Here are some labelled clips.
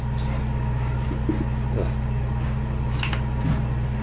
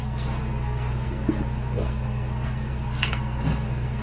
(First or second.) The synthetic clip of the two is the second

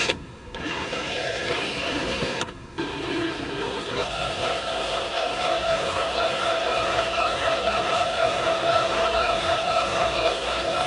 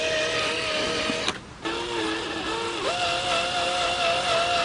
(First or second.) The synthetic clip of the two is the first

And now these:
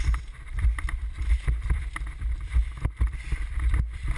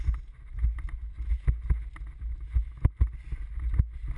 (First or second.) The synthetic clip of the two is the first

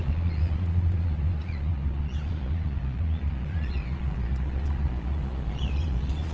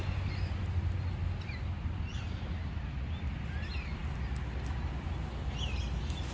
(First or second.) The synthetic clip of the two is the first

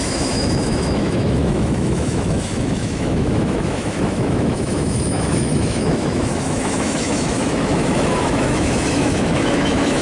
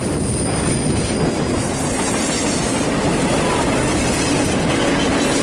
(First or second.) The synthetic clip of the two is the first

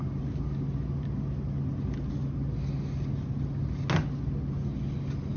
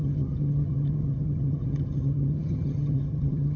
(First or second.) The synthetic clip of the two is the second